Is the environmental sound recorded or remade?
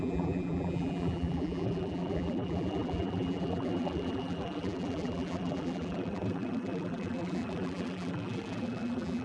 remade